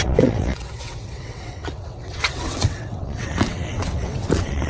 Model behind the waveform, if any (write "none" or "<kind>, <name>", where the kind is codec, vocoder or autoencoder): vocoder, WaveNeXt